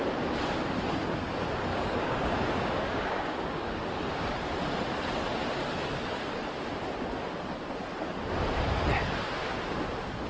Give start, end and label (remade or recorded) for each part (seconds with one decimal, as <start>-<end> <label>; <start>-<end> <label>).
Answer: 0.0-1.7 recorded; 1.7-3.8 remade; 3.8-10.3 recorded